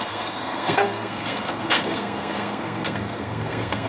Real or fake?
fake